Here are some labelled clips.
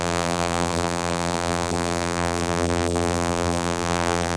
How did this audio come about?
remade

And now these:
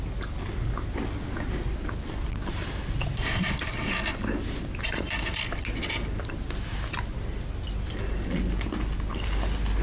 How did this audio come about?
recorded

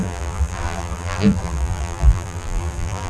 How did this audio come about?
remade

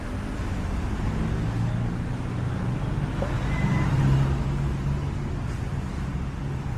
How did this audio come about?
recorded